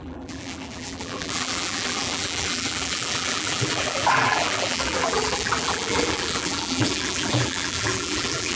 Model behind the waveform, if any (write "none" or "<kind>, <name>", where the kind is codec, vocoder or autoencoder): vocoder, BigVGAN v2